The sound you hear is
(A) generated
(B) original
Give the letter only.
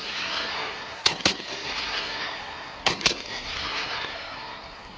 A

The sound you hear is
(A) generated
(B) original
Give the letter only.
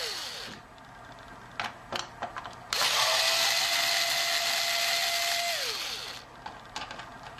B